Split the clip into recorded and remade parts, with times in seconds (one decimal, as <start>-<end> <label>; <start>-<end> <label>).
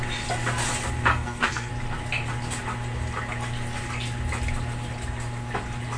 0.0-1.1 recorded; 1.1-1.7 remade; 1.7-6.0 recorded